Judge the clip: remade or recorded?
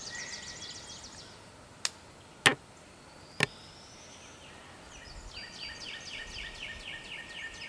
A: recorded